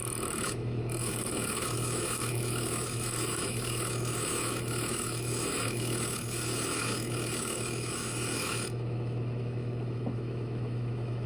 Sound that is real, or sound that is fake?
fake